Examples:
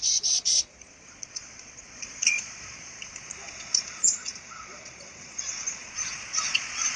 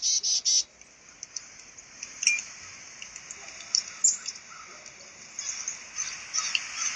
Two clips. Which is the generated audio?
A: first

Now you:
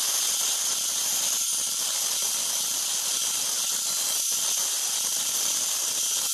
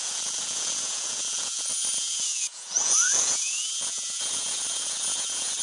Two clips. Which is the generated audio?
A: second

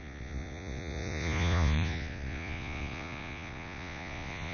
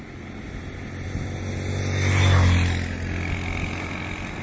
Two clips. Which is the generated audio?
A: first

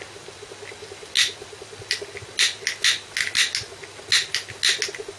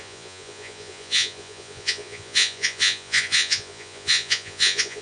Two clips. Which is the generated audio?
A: second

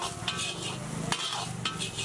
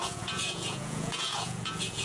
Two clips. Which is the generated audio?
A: second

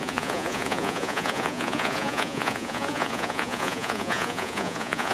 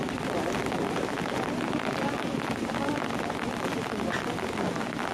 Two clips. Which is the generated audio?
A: first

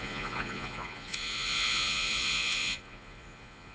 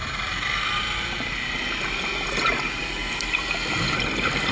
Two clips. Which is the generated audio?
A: first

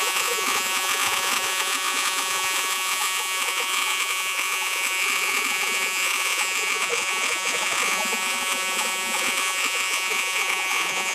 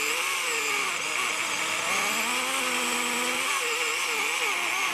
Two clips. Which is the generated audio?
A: first